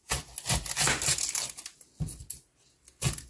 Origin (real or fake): real